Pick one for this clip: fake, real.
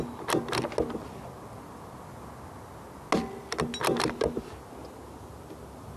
real